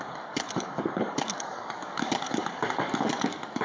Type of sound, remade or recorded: remade